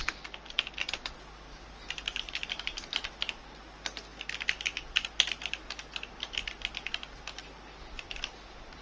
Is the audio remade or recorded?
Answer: recorded